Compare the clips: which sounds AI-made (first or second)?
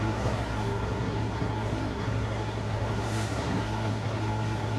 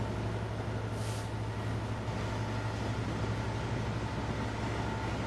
first